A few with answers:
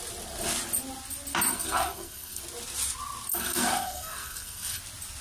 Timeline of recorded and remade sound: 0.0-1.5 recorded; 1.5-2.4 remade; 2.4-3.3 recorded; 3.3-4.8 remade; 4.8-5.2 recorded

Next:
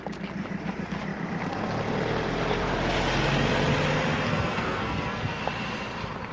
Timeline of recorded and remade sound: 0.0-4.3 recorded; 4.3-5.4 remade; 5.4-6.3 recorded

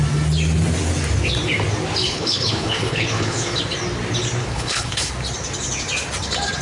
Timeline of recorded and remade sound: 0.0-2.0 recorded; 2.0-3.6 remade; 3.6-4.4 recorded; 4.4-5.1 remade; 5.1-6.6 recorded

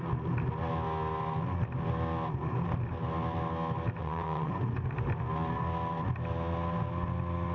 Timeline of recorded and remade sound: 0.0-4.0 recorded; 4.0-4.5 remade; 4.5-7.5 recorded

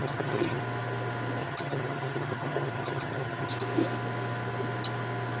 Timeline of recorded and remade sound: 0.0-0.6 remade; 0.6-1.4 recorded; 1.4-3.5 remade; 3.5-5.4 recorded